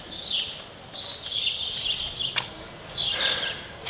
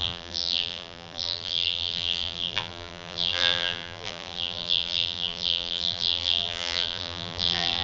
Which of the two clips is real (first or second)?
first